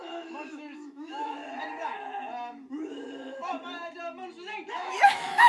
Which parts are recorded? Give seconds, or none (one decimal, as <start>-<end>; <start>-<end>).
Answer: 1.4-4.7